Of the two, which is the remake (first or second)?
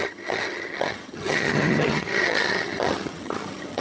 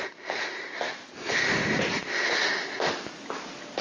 first